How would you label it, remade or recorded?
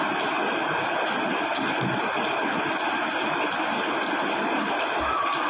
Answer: recorded